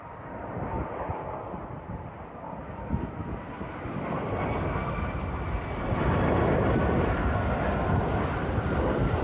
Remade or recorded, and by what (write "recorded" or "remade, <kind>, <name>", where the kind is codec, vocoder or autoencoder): recorded